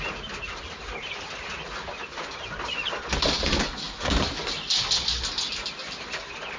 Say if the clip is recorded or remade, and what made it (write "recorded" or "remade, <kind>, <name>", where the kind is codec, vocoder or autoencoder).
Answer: recorded